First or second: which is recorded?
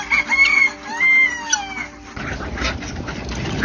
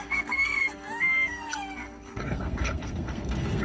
first